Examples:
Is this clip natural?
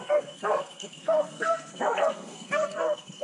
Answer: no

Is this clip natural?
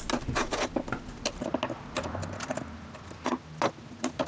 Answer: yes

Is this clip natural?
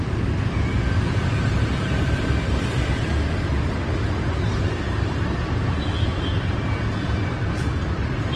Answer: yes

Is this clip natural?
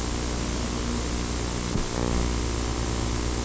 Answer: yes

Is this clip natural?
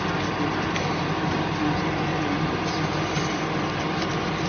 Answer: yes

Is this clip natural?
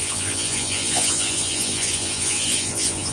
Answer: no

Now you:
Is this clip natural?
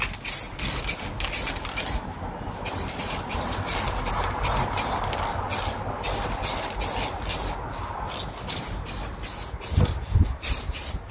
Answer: yes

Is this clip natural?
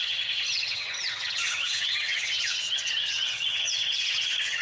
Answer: no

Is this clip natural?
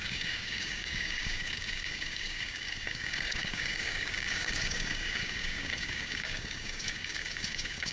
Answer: no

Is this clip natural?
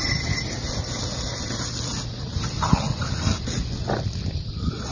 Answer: yes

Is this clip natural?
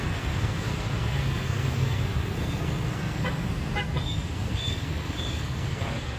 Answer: no